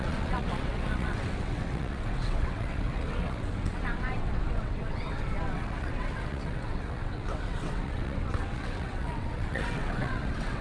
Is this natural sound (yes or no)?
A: no